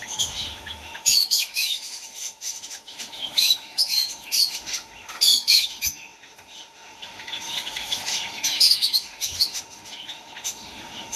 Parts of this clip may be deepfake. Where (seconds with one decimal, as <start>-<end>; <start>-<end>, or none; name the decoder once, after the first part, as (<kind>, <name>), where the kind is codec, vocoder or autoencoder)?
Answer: 0.0-11.2 (autoencoder, DAC-VAE)